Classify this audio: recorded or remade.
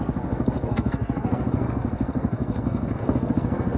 remade